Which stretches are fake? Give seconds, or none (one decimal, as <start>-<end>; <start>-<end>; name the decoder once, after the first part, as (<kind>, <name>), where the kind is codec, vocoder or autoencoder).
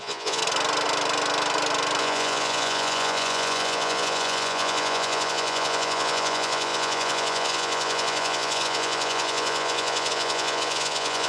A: 0.0-0.4 (vocoder, Vocos); 2.0-11.3